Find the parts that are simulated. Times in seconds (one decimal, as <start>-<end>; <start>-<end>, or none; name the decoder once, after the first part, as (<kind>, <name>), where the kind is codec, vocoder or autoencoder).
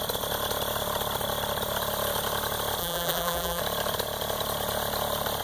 2.8-3.6 (vocoder, BigVGAN v2)